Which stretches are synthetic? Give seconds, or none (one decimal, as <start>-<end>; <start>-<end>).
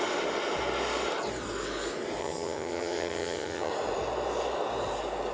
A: 2.2-3.7